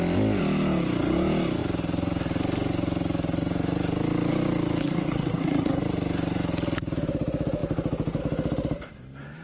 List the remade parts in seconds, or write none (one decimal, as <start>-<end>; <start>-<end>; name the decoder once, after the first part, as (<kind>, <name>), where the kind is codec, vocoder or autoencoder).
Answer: 4.8-5.8 (codec, SNAC)

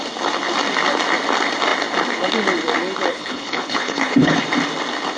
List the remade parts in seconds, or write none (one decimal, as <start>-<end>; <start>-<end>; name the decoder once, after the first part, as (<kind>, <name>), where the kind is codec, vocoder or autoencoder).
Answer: 3.1-4.4 (codec, HILCodec)

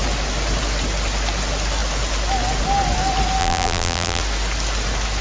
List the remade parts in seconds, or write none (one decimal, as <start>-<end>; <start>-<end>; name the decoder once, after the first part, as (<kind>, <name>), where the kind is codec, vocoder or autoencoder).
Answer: 3.4-4.2 (vocoder, BigVGAN v2)

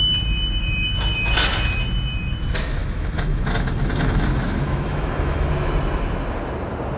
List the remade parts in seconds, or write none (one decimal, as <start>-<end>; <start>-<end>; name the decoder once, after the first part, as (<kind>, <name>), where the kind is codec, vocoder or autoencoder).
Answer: 2.8-5.5 (autoencoder, DAC-VAE)

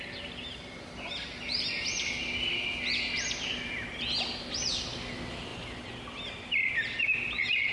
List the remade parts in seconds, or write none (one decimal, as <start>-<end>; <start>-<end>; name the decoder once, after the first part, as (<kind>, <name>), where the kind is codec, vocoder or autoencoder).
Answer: none

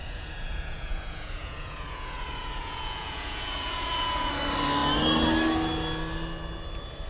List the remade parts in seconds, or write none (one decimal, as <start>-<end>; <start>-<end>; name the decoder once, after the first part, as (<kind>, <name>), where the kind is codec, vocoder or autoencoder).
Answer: 0.0-4.3 (vocoder, Vocos)